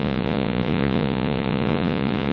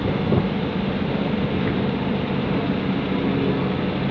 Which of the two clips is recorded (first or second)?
second